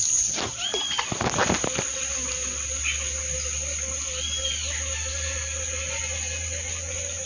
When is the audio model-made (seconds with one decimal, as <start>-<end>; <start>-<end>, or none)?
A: none